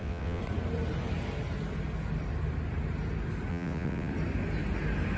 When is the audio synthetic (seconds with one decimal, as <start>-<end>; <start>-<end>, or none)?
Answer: 0.0-0.4; 3.5-4.1